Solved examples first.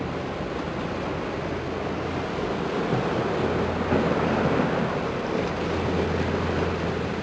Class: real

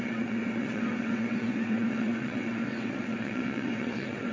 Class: fake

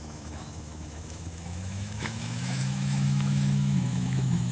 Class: fake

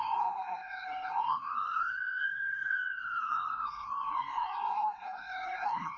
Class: fake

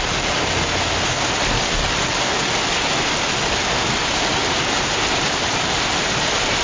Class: real